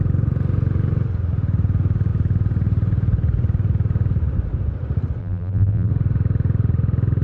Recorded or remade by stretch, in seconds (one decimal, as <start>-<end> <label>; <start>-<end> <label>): 0.0-5.2 recorded; 5.2-5.9 remade; 5.9-7.2 recorded